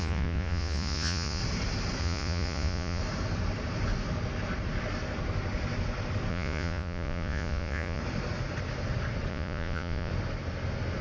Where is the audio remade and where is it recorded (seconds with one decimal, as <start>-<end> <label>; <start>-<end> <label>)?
0.0-1.4 remade; 1.4-2.0 recorded; 2.0-3.0 remade; 3.0-6.3 recorded; 6.3-8.0 remade; 8.0-9.3 recorded; 9.3-10.1 remade; 10.1-11.0 recorded